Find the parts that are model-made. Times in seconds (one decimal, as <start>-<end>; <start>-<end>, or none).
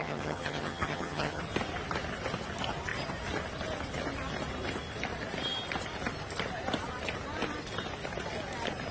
0.0-1.4